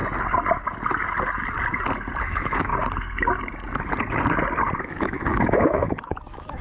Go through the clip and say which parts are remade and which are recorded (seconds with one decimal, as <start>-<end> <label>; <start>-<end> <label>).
0.0-2.2 recorded; 2.2-2.7 remade; 2.7-4.8 recorded; 4.8-6.6 remade